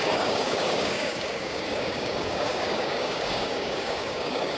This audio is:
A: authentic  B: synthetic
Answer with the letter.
B